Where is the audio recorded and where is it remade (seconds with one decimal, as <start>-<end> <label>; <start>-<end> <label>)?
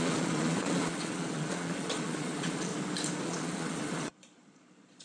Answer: 0.0-2.7 remade; 2.7-3.2 recorded; 3.2-5.0 remade